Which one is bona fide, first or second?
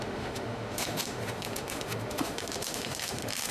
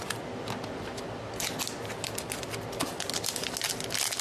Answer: second